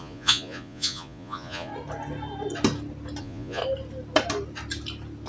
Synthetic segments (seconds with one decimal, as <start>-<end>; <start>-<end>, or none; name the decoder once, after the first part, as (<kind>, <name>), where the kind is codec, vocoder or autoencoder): 0.0-1.7 (vocoder, Vocos); 3.2-3.6